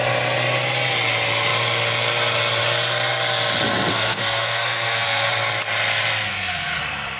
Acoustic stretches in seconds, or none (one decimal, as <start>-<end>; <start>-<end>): 0.0-3.9; 5.3-6.3; 6.8-7.2